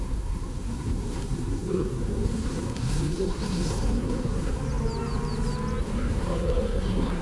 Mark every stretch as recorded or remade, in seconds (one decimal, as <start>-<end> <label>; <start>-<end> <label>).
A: 0.0-4.6 remade; 4.6-5.8 recorded; 5.8-7.2 remade